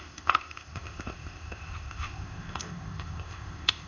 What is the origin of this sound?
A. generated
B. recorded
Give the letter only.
A